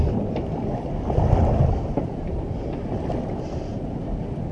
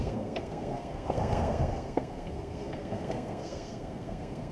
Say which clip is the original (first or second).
first